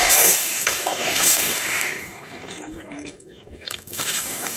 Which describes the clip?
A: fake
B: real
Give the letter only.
A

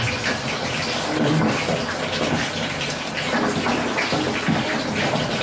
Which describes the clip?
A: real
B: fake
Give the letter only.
A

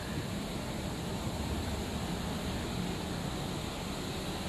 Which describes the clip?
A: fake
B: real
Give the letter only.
B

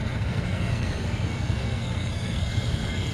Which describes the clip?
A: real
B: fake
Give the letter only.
B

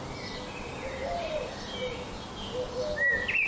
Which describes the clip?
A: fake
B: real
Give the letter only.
B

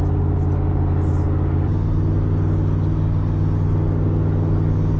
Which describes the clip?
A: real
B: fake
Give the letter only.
A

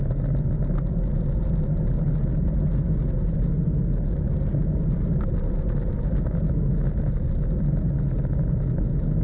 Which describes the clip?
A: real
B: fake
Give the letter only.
A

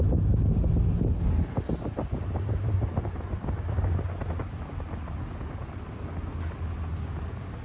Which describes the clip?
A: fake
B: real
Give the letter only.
B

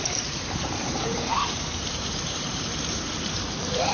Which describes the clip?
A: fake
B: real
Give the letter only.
A